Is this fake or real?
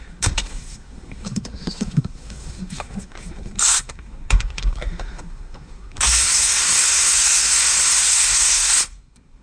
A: fake